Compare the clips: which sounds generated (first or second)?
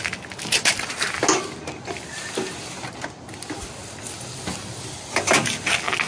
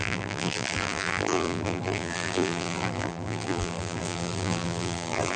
second